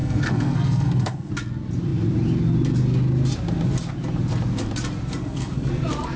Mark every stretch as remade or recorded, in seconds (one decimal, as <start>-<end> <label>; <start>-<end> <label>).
0.0-1.3 remade; 1.3-5.2 recorded; 5.2-5.7 remade; 5.7-6.2 recorded